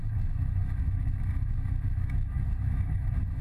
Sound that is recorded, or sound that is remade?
remade